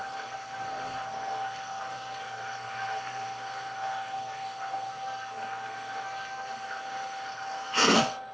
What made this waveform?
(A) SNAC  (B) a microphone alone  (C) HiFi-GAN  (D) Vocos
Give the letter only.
A